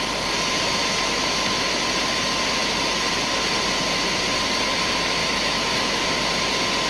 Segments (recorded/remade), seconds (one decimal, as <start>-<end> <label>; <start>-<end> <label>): 0.0-0.8 recorded; 0.8-1.8 remade; 1.8-5.2 recorded; 5.2-6.0 remade; 6.0-6.9 recorded